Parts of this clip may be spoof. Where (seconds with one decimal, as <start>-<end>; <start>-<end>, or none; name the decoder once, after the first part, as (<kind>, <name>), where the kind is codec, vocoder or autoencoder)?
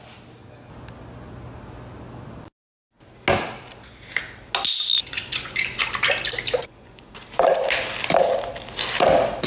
4.9-5.8 (vocoder, Vocos); 6.6-7.1